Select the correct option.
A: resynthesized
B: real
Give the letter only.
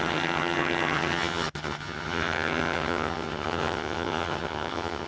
A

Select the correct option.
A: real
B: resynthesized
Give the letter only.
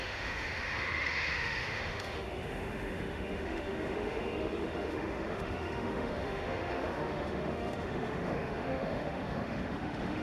B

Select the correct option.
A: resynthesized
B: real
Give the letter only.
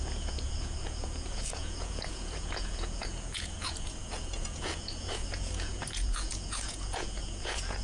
A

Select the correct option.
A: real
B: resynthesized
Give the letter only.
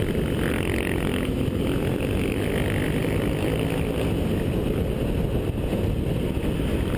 A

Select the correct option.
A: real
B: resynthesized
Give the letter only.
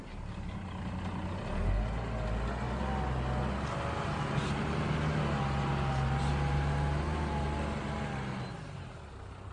A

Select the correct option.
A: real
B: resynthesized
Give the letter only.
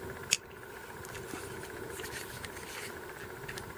A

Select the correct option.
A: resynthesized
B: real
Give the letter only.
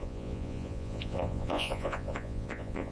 A